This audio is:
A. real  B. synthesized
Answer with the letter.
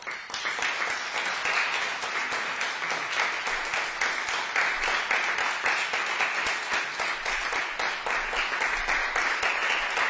A